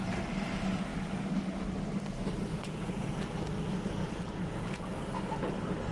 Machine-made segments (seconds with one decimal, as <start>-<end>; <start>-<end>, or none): 2.5-3.2; 4.0-5.0

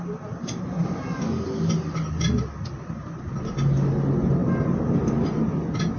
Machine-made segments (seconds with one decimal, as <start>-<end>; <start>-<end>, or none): none

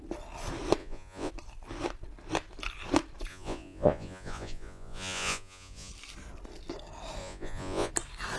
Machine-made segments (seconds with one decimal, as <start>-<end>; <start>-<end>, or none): 0.8-1.3; 3.3-5.9; 7.2-7.9

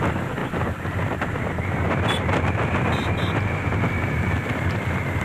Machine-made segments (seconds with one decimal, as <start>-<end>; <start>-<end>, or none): none

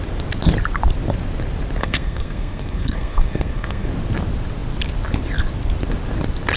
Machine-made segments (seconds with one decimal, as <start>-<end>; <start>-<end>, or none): 1.8-3.9

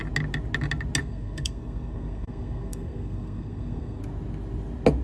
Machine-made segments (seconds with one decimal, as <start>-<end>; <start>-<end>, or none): 1.0-4.0

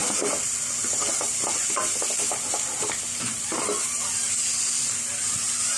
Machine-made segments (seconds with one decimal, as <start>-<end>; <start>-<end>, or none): none